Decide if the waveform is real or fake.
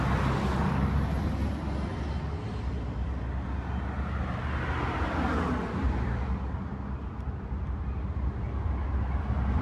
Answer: real